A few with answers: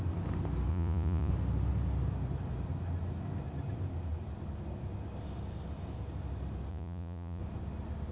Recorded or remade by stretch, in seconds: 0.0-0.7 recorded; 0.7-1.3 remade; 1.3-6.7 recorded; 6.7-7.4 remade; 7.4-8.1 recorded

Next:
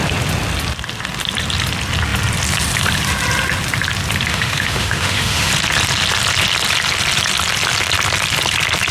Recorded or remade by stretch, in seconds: 0.0-4.3 recorded; 4.3-5.5 remade; 5.5-8.9 recorded

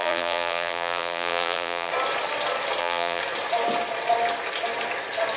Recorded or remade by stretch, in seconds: 0.0-1.9 remade; 1.9-2.8 recorded; 2.8-3.2 remade; 3.2-5.4 recorded

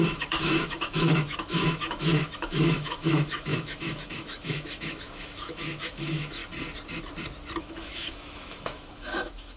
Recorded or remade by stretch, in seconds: 0.0-6.4 remade; 6.4-7.6 recorded; 7.6-9.6 remade

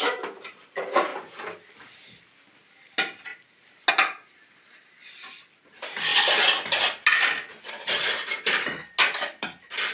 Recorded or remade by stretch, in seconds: 0.0-9.9 recorded